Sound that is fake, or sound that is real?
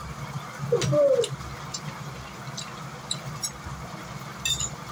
real